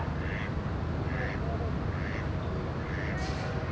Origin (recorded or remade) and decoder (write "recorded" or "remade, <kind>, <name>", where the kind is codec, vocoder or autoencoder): recorded